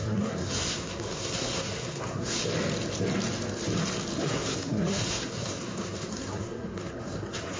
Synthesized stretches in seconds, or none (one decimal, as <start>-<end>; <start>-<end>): 0.0-2.4; 4.2-7.6